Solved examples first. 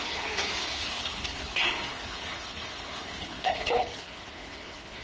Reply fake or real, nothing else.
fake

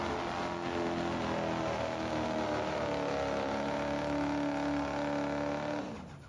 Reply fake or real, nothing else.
real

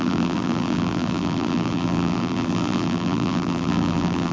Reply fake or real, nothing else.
fake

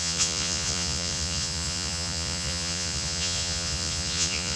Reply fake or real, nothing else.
fake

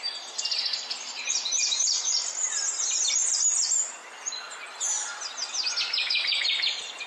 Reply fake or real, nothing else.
real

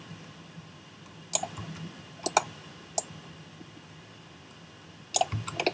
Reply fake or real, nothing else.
real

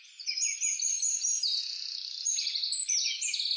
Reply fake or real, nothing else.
real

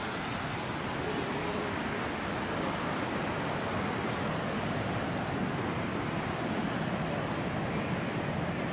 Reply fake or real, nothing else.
real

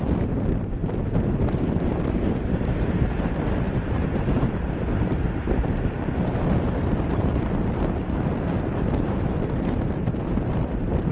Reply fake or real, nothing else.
fake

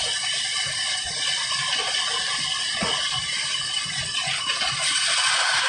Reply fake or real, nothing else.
real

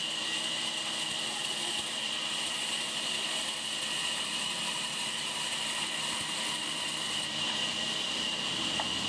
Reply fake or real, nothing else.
fake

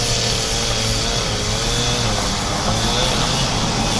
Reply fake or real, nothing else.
real